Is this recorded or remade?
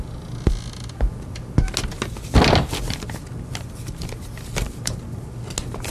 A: recorded